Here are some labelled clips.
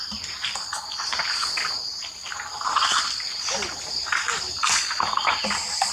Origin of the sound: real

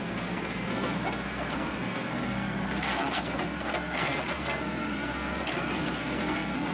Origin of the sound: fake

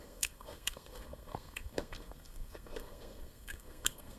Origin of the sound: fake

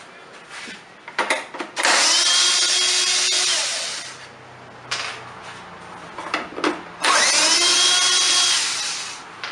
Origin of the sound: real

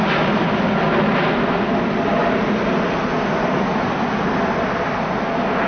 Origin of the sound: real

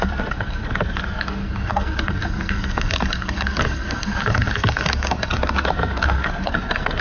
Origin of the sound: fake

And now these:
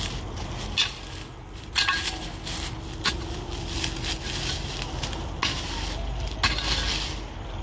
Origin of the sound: real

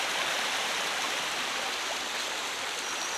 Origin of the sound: real